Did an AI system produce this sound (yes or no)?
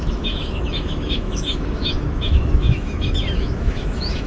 yes